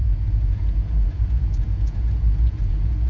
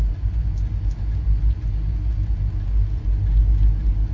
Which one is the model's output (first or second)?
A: first